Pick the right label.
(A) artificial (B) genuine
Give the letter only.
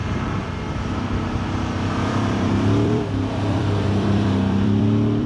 A